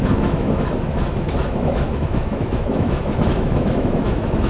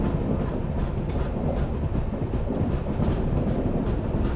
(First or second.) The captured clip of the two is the second